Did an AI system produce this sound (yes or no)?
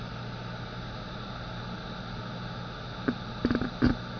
no